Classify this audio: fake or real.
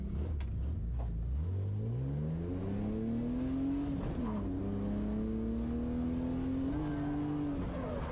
real